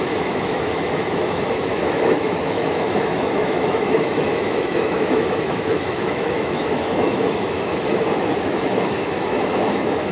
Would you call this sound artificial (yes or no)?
yes